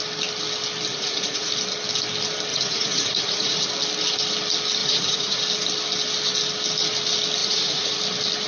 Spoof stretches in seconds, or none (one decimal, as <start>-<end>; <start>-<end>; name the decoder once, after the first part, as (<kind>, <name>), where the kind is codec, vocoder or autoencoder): 0.9-1.5 (vocoder, Vocos); 2.5-3.7; 4.8-5.4; 7.4-8.0